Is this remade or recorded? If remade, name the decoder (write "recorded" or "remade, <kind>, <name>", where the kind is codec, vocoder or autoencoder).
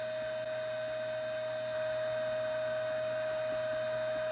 recorded